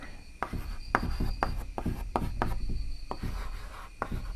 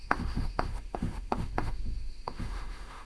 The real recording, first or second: first